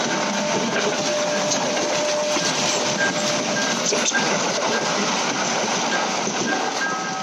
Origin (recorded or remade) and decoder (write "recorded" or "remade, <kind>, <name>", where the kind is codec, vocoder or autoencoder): recorded